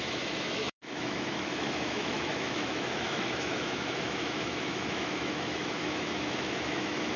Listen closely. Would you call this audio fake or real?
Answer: fake